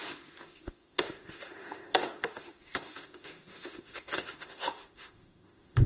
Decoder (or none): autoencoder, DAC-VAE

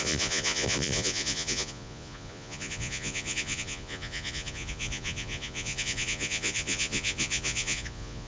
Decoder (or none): vocoder, Vocos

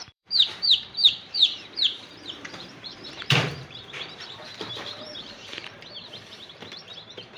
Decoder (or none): vocoder, BigVGAN v2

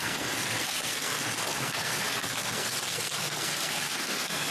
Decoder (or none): codec, SNAC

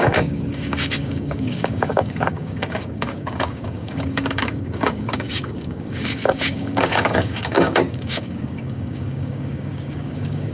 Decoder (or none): codec, DAC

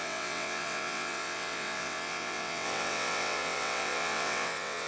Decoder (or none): vocoder, WaveNeXt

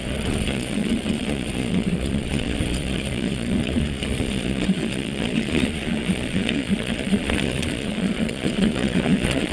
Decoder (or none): vocoder, Vocos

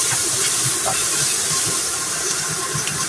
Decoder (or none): vocoder, BigVGAN v2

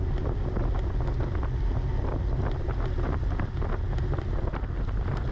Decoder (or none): none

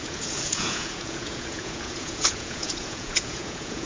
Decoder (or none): vocoder, Vocos